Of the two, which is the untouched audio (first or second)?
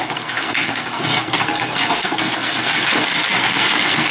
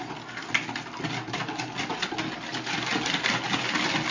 second